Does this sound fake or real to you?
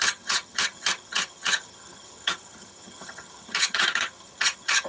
fake